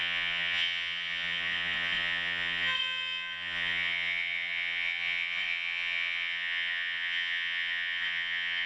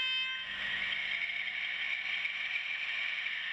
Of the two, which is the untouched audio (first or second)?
second